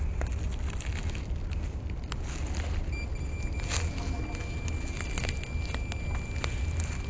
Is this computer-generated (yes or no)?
no